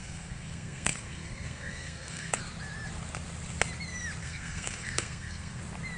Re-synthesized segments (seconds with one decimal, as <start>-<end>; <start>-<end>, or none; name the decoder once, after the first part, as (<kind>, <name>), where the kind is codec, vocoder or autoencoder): 0.0-2.4 (codec, SNAC); 4.2-5.6